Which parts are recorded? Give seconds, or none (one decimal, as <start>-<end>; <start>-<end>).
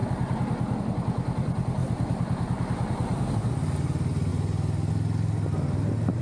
0.0-1.8; 3.3-6.2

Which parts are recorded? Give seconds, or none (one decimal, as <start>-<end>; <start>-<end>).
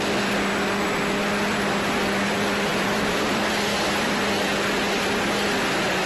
0.0-2.7; 3.4-6.1